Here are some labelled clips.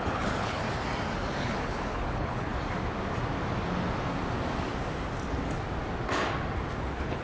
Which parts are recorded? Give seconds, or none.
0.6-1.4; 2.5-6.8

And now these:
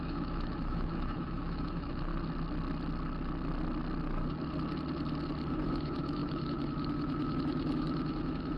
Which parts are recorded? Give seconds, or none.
2.1-5.5

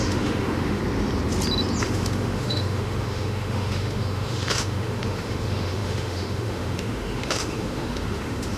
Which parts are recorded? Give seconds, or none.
0.8-1.8

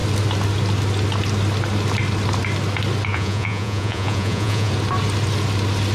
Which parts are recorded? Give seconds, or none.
0.0-3.1; 4.7-5.9